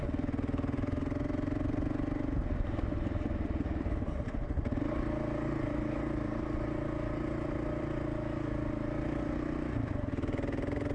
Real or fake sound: real